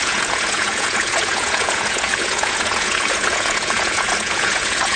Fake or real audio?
fake